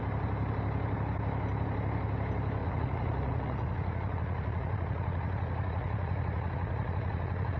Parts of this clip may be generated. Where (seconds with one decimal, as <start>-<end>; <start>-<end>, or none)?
2.6-7.6